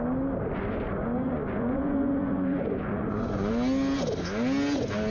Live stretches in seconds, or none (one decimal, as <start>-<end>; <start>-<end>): 0.0-1.0; 3.5-5.1